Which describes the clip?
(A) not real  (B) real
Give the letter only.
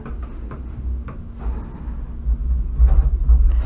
B